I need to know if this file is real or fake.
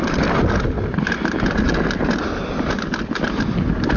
real